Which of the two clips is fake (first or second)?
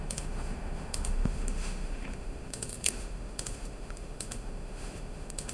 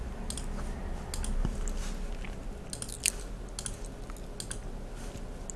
first